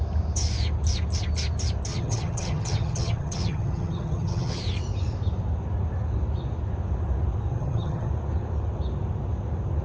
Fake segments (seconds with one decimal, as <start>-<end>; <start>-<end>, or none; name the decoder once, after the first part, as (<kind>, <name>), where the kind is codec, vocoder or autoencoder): 1.9-4.6 (vocoder, HiFi-GAN); 7.5-8.1